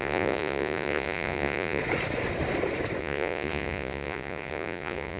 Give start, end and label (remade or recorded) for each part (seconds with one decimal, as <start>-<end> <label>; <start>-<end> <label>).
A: 0.0-1.8 remade; 1.8-3.0 recorded; 3.0-5.2 remade